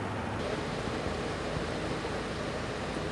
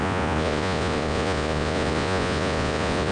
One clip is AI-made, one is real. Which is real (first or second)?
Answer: first